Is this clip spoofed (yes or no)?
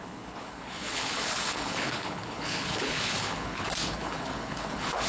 yes